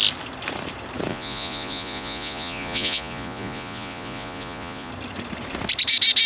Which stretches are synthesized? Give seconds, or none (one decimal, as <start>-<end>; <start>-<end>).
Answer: 1.1-4.9